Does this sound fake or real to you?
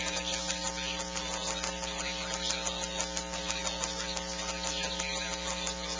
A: real